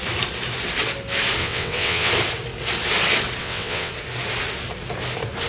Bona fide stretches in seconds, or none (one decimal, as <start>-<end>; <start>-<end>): 0.0-1.4; 2.1-3.4; 3.9-5.5

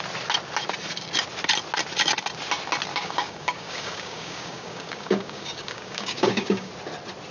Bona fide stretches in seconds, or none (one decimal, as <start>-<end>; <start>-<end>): 0.0-2.9; 6.7-7.3

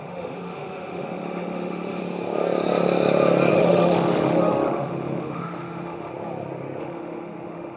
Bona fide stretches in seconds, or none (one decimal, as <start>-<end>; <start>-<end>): 2.0-3.5; 6.1-6.8